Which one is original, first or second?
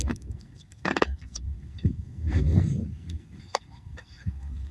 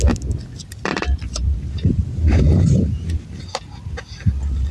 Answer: second